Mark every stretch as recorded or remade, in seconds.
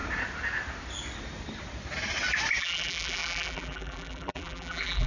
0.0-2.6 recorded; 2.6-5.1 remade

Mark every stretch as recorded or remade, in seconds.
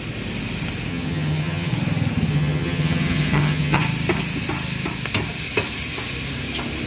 0.0-0.9 recorded; 0.9-1.7 remade; 1.7-2.3 recorded; 2.3-3.8 remade; 3.8-6.9 recorded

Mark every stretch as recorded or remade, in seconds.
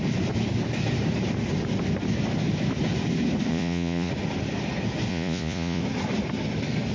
0.0-3.5 recorded; 3.5-4.1 remade; 4.1-5.1 recorded; 5.1-5.8 remade; 5.8-6.9 recorded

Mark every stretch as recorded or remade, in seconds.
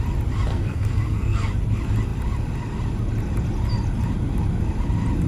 0.0-0.5 recorded; 0.5-1.5 remade; 1.5-5.3 recorded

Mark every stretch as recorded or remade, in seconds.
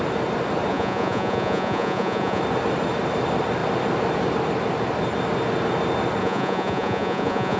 0.0-0.7 recorded; 0.7-2.4 remade; 2.4-6.2 recorded; 6.2-7.6 remade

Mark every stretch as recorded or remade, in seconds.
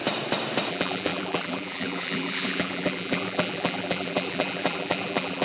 0.0-0.7 recorded; 0.7-5.4 remade